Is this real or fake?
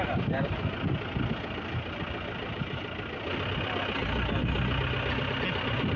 real